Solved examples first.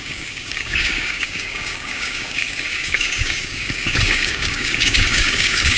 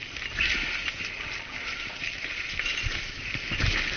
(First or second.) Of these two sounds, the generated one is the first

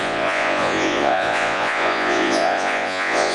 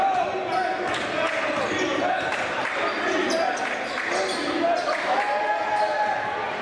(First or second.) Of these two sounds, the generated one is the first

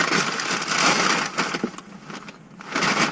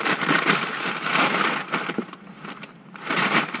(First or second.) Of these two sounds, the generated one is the second